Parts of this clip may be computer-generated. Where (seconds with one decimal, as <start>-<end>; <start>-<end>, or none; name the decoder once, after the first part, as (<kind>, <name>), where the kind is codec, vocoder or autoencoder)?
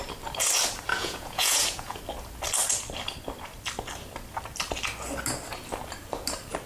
0.9-2.0 (vocoder, Vocos)